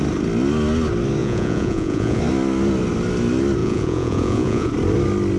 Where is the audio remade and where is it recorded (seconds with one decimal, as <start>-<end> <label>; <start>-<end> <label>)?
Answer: 0.0-1.2 recorded; 1.2-2.2 remade; 2.2-3.6 recorded; 3.6-4.7 remade; 4.7-5.4 recorded